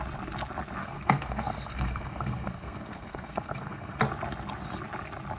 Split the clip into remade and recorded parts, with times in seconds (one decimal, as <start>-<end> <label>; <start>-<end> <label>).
0.0-0.8 recorded; 0.8-4.0 remade; 4.0-5.4 recorded

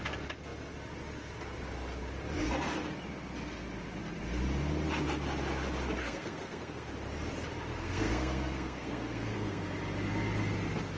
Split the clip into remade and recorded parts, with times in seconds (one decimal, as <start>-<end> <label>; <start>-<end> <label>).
0.0-6.0 recorded; 6.0-6.9 remade; 6.9-7.7 recorded; 7.7-9.6 remade; 9.6-11.0 recorded

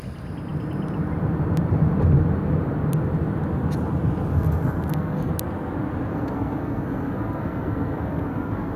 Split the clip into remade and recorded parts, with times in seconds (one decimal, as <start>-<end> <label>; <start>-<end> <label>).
0.0-4.3 recorded; 4.3-5.3 remade; 5.3-6.1 recorded; 6.1-8.8 remade